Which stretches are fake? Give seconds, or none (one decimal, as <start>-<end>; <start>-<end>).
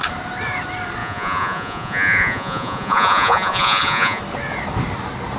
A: 1.0-4.2